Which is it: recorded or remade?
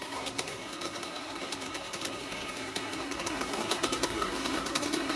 remade